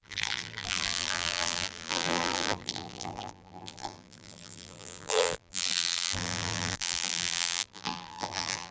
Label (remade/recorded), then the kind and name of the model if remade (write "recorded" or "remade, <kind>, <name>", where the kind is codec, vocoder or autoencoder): remade, vocoder, BigVGAN v2